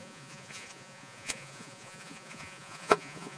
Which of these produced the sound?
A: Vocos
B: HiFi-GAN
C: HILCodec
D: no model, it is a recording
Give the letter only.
A